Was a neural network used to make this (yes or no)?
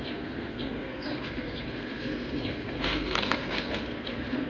yes